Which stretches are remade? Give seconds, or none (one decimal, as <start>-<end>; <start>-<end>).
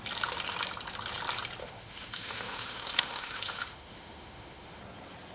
1.6-4.8